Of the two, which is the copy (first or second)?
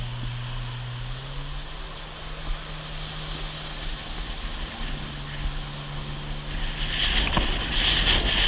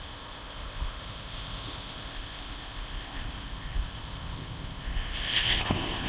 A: second